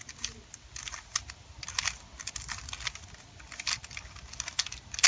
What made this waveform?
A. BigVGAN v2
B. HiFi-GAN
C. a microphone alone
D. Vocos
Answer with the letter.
C